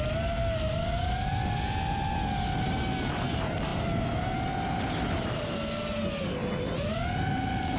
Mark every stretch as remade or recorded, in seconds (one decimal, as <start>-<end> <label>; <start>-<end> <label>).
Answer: 0.0-7.8 recorded